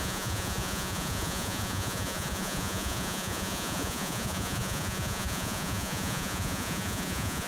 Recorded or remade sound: remade